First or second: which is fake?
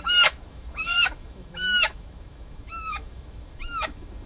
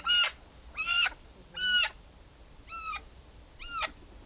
first